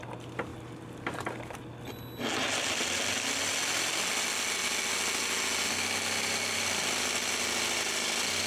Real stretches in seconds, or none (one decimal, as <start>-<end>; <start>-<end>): 0.0-8.5